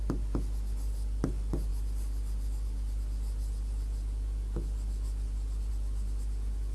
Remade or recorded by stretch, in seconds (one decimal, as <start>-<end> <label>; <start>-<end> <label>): 0.0-6.7 recorded